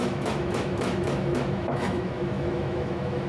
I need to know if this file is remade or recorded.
remade